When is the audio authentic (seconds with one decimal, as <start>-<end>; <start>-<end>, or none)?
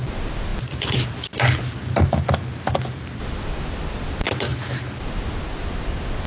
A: 0.0-6.3